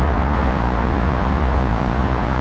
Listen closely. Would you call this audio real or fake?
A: fake